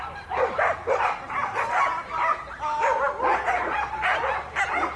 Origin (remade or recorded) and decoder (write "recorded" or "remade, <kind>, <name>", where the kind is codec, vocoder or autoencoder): remade, vocoder, BigVGAN v2